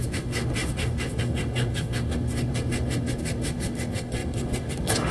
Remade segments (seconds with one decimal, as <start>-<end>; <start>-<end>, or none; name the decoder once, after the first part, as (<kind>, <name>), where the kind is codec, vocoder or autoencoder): 0.0-5.1 (autoencoder, DAC-VAE)